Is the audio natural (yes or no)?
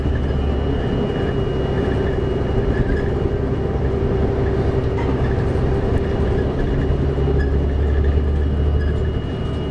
yes